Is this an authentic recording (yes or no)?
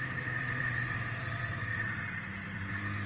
no